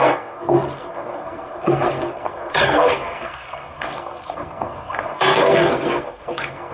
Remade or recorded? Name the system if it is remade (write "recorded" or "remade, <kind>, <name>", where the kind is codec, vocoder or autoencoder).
remade, codec, SNAC